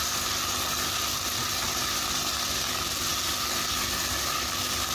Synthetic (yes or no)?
no